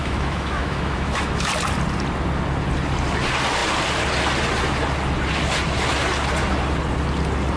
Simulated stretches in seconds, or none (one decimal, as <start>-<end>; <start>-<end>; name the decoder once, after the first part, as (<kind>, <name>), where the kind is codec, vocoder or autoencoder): 0.0-1.5 (autoencoder, DAC-VAE)